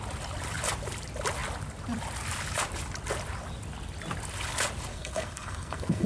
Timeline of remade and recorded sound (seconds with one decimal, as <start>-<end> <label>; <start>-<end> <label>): 0.0-4.9 recorded; 4.9-6.1 remade